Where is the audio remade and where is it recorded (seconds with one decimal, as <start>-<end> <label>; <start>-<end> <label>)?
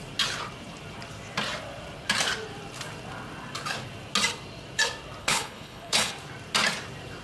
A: 0.0-5.2 recorded; 5.2-6.1 remade; 6.1-7.2 recorded